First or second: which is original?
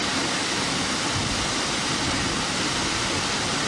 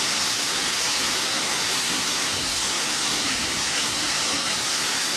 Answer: first